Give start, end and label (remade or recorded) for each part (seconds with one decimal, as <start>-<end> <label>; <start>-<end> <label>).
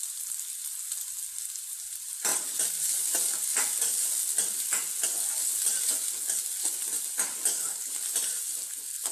0.0-9.1 recorded